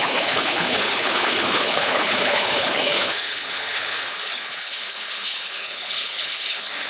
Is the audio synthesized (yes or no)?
yes